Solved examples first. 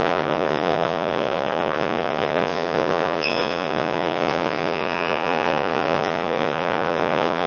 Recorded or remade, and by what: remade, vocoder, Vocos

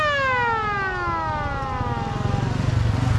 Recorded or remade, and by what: recorded